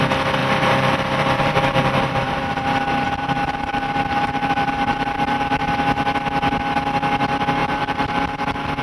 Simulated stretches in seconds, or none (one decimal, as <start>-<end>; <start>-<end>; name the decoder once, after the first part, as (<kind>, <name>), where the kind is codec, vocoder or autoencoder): 0.4-5.7 (vocoder, BigVGAN v2); 7.6-8.2